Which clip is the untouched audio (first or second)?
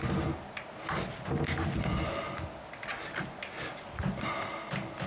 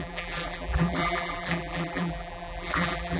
first